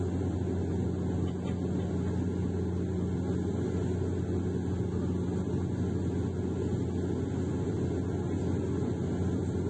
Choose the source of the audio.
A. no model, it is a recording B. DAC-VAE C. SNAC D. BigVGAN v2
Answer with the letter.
A